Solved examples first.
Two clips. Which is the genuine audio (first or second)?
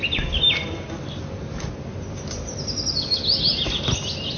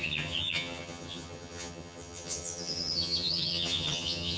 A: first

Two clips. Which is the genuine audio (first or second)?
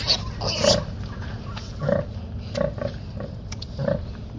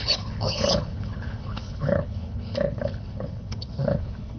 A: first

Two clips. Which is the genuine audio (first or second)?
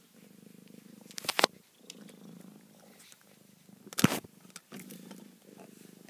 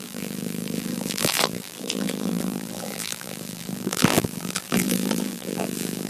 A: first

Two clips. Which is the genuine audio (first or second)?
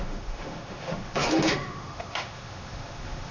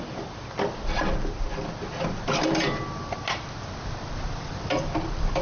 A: second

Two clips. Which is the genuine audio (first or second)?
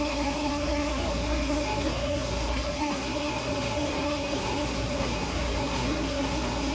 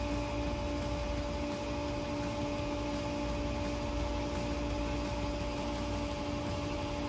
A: second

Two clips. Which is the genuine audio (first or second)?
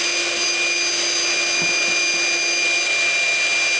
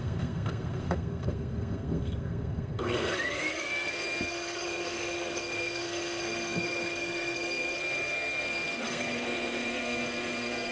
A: first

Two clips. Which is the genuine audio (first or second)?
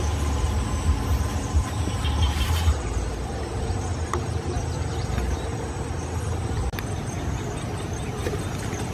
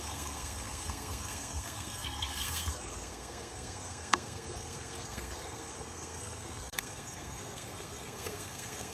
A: first